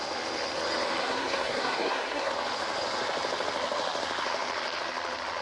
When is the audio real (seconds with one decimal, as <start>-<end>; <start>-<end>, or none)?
0.0-1.0; 2.3-5.4